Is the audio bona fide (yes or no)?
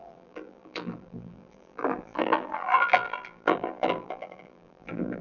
no